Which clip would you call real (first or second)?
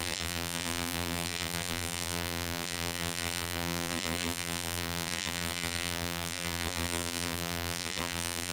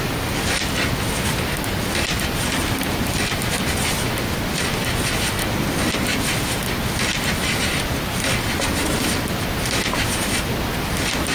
second